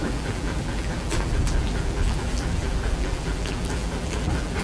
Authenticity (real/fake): fake